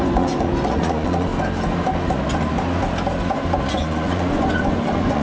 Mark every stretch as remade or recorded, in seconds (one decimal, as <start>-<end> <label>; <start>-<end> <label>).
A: 0.0-1.3 remade; 1.3-3.7 recorded; 3.7-5.2 remade

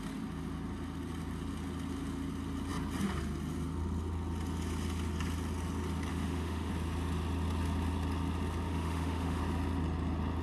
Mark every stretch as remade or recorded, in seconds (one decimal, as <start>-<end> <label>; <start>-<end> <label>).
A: 0.0-6.1 recorded; 6.1-6.7 remade; 6.7-8.7 recorded; 8.7-9.4 remade; 9.4-10.4 recorded